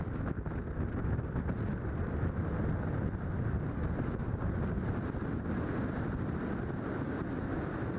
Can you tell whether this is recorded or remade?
recorded